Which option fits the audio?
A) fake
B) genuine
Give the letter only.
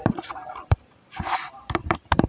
A